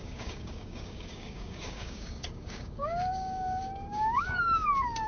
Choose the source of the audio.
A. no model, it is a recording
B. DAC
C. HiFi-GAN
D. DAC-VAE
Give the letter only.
B